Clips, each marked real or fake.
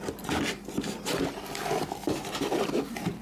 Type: real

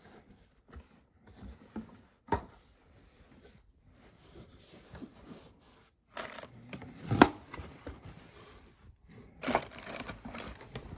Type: fake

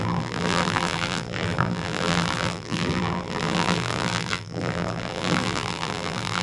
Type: fake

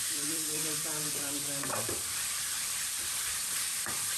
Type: fake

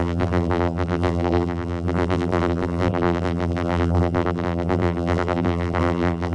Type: fake